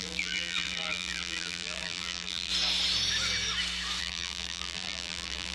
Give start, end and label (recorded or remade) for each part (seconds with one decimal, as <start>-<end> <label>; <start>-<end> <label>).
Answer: 0.0-2.5 remade; 2.5-4.0 recorded; 4.0-5.5 remade